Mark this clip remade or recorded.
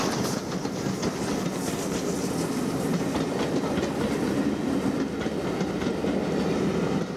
recorded